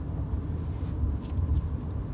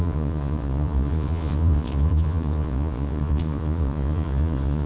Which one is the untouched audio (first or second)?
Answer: first